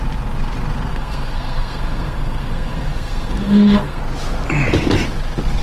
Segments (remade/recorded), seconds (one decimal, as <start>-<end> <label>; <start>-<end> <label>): 0.0-0.9 recorded; 0.9-4.0 remade; 4.0-5.6 recorded